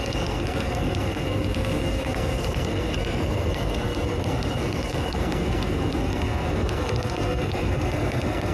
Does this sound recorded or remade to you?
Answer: remade